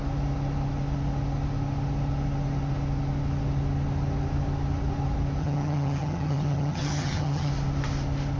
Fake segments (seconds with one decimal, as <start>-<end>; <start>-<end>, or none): 5.4-7.5